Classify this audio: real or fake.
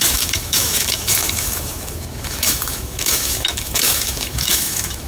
fake